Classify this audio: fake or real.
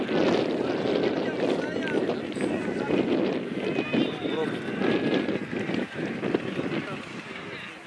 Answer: real